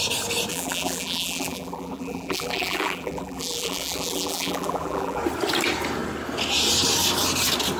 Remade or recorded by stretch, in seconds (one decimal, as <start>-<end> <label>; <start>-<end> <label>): 0.0-0.5 recorded; 0.5-5.2 remade; 5.2-7.8 recorded